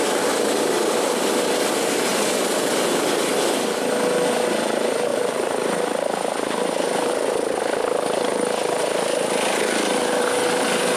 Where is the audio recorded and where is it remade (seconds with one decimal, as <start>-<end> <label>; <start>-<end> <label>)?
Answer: 0.0-5.1 recorded; 5.1-7.6 remade; 7.6-11.0 recorded